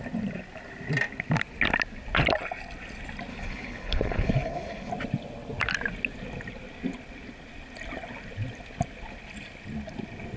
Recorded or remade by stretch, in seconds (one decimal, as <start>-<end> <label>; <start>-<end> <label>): 0.0-3.3 recorded; 3.3-4.9 remade; 4.9-10.4 recorded